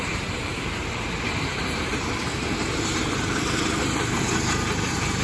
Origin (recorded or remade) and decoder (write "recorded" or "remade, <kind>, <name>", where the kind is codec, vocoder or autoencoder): remade, vocoder, BigVGAN v2